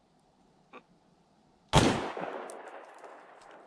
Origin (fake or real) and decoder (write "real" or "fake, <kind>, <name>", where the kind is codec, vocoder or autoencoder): real